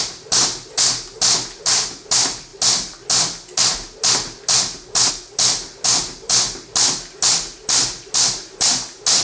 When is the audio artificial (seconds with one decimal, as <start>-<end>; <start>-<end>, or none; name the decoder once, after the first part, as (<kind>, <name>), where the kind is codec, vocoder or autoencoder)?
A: none